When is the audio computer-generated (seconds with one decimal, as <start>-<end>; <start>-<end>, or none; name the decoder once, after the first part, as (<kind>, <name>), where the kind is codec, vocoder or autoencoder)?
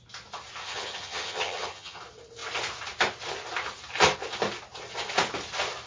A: 0.6-2.0 (vocoder, HiFi-GAN)